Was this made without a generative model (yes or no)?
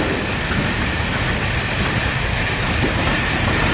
yes